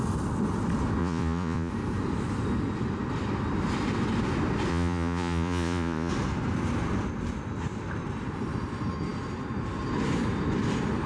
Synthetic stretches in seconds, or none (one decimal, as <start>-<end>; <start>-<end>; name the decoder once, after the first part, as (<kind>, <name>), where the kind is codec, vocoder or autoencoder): 1.0-1.7 (vocoder, Vocos); 4.7-6.1